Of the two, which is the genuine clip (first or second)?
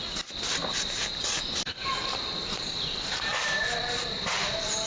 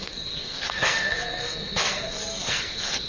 first